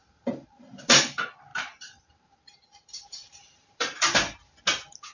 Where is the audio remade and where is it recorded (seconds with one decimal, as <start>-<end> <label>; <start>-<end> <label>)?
0.0-1.0 remade; 1.0-1.5 recorded; 1.5-4.6 remade; 4.6-5.1 recorded